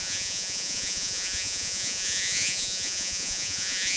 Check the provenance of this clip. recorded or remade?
remade